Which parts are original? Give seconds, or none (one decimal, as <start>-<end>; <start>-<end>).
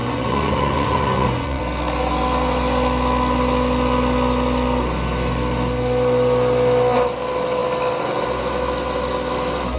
1.6-9.8